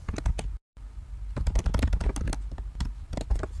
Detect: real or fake fake